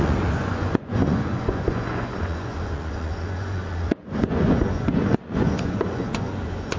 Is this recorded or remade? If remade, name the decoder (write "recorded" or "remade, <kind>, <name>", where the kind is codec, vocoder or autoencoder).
remade, vocoder, Vocos